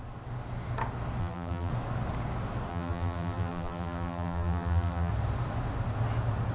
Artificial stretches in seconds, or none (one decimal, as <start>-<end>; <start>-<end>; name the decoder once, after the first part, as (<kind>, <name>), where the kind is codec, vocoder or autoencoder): 1.2-1.7 (vocoder, BigVGAN v2); 2.7-5.1